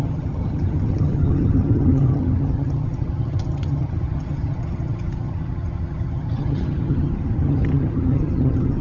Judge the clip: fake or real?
fake